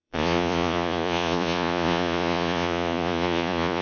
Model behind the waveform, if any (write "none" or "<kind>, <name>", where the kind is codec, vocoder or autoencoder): vocoder, Vocos